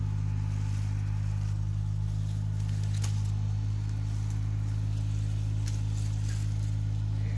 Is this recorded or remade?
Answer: recorded